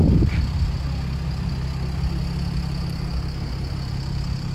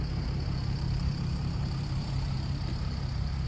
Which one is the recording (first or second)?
first